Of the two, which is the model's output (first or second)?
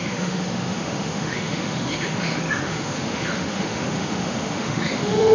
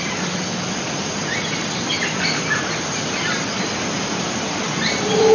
first